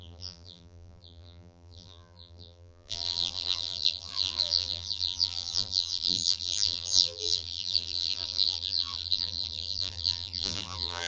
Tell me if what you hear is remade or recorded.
remade